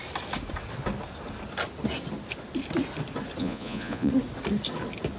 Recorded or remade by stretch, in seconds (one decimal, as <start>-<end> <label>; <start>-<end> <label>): 0.0-3.4 recorded; 3.4-4.1 remade; 4.1-5.2 recorded